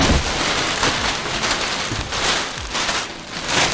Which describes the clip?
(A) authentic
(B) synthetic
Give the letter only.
A